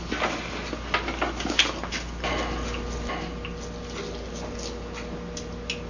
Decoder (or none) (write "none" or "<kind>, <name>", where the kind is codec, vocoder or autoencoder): none